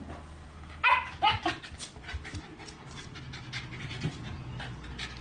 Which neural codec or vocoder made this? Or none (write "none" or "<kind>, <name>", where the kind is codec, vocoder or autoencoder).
none